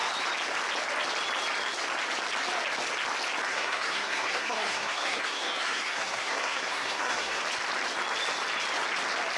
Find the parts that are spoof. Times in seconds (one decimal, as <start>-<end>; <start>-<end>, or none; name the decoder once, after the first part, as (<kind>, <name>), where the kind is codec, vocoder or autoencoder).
3.5-7.4 (codec, SNAC)